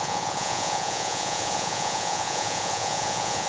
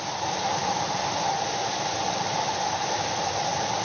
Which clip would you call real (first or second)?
second